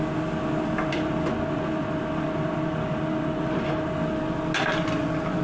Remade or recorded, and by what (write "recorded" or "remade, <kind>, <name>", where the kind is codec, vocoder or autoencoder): recorded